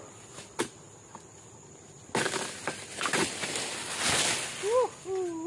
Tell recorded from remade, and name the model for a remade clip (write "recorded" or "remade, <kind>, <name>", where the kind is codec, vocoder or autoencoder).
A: recorded